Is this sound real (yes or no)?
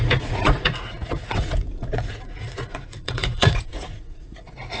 no